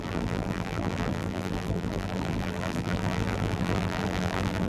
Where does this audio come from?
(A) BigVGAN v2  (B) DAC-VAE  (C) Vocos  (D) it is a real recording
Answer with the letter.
A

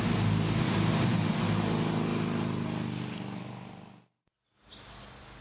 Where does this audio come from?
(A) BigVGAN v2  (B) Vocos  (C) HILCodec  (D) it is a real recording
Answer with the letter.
D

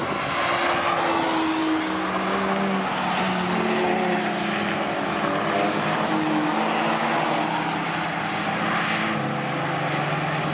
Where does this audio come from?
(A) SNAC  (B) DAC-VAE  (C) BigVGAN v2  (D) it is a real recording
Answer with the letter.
D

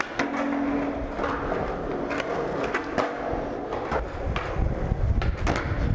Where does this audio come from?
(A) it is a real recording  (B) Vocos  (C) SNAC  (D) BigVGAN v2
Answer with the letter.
A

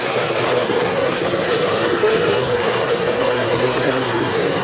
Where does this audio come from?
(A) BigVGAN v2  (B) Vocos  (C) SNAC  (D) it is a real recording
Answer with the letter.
C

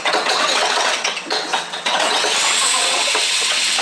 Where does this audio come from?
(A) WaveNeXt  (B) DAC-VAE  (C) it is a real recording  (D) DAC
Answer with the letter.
A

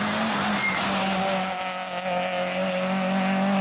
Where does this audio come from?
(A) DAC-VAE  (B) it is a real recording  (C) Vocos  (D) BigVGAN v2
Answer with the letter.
B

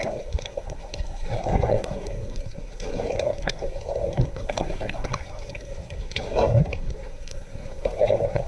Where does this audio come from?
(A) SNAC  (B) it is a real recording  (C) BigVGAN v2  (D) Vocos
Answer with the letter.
A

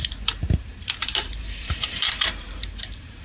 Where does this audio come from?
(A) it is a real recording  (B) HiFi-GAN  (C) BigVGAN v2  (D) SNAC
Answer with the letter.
C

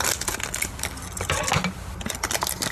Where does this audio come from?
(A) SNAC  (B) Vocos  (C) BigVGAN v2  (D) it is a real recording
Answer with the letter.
D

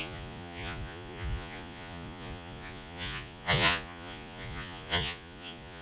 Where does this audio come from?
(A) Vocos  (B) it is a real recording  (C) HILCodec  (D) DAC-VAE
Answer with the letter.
A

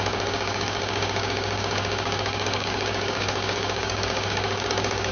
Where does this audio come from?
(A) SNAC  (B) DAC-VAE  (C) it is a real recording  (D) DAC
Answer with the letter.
D